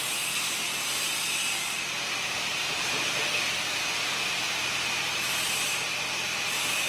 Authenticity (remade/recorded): remade